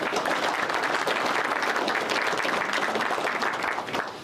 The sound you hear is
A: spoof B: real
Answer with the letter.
B